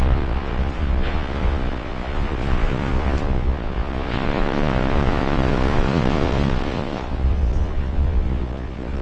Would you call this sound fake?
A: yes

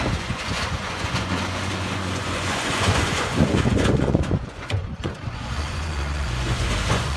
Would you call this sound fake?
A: yes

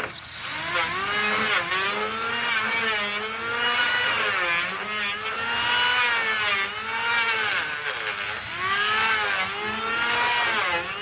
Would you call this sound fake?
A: no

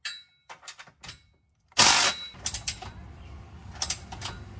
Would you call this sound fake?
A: no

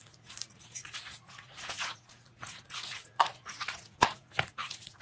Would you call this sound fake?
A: yes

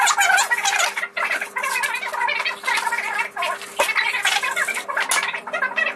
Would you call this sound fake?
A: no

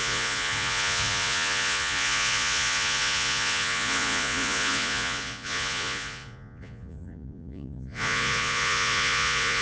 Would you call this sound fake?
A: yes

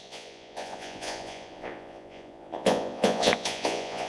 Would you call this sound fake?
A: yes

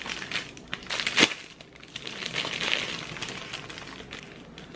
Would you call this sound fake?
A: no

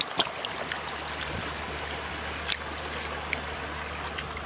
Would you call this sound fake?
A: no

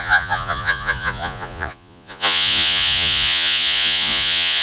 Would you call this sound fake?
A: yes